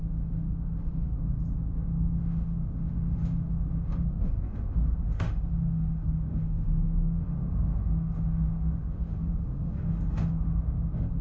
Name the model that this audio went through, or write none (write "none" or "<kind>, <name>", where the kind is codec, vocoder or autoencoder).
autoencoder, DAC-VAE